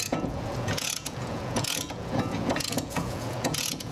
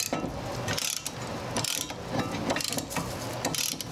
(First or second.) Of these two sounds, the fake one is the first